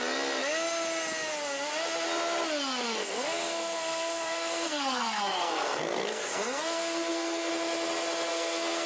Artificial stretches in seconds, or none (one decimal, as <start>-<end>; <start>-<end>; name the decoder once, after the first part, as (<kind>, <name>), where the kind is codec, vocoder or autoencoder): 3.0-7.5 (codec, SNAC); 8.3-8.9